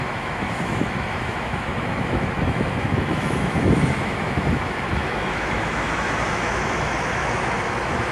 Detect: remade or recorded remade